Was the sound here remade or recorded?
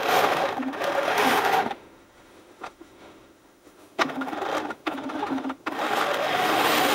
remade